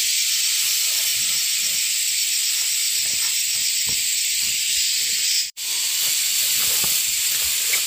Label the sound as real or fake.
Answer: fake